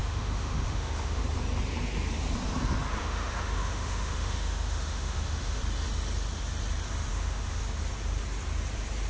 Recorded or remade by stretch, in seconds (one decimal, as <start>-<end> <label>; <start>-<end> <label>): 0.0-1.2 remade; 1.2-3.0 recorded; 3.0-5.6 remade; 5.6-7.1 recorded; 7.1-7.6 remade; 7.6-9.1 recorded

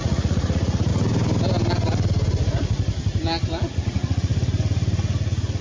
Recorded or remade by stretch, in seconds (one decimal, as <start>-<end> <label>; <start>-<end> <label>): 0.0-0.9 remade; 0.9-3.7 recorded; 3.7-4.3 remade; 4.3-5.6 recorded

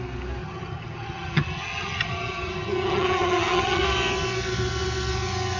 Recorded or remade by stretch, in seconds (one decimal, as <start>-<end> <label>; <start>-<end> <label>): 0.0-0.4 recorded; 0.4-3.8 remade; 3.8-5.6 recorded

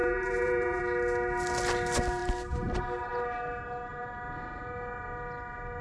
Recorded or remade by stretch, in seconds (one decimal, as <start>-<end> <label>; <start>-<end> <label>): 0.0-0.8 remade; 0.8-5.8 recorded

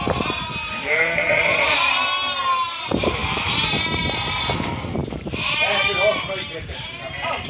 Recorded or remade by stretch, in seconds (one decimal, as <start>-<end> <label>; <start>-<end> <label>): 0.0-3.2 remade; 3.2-5.1 recorded; 5.1-7.5 remade

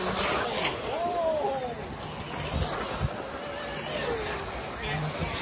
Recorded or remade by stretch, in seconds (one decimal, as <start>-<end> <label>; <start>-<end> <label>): 0.0-5.4 recorded

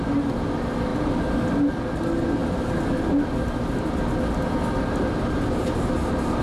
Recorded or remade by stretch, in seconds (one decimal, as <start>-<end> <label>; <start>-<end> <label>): 0.0-6.4 recorded